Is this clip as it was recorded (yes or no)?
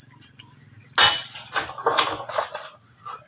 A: yes